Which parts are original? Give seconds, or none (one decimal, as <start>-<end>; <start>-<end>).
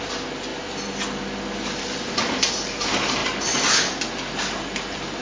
0.0-5.2